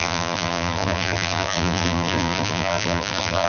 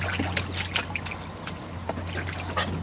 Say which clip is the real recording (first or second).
second